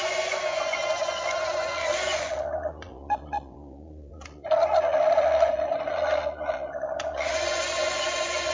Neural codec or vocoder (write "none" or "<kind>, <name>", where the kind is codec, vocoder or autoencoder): vocoder, Vocos